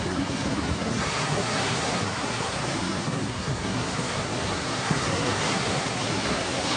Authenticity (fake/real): fake